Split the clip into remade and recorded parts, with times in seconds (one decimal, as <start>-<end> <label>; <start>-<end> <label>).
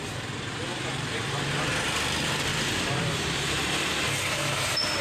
0.0-5.0 recorded